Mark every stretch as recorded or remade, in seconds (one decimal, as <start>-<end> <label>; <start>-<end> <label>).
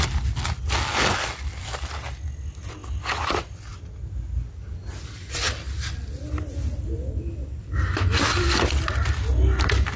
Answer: 0.0-10.0 recorded